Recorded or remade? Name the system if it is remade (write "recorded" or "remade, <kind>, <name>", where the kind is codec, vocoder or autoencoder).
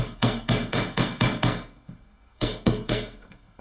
remade, codec, SNAC